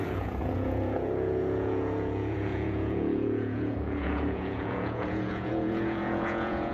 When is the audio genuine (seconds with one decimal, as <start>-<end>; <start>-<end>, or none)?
none